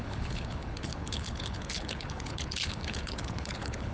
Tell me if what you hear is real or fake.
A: fake